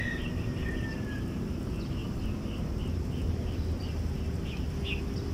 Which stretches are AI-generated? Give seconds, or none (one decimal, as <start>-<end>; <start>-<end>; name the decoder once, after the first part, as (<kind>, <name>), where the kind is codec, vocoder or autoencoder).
none